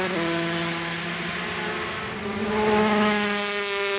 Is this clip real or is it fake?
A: real